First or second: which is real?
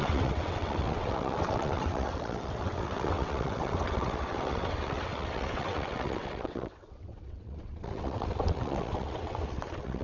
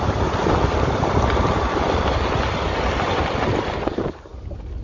second